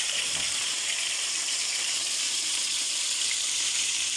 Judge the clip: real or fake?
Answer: fake